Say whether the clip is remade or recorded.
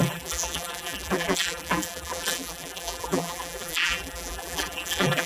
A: remade